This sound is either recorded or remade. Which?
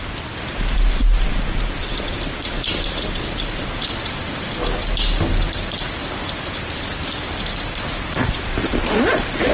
recorded